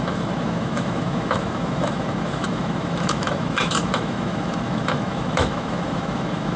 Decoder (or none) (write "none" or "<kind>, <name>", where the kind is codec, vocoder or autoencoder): autoencoder, DAC-VAE